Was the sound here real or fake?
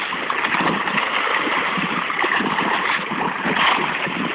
real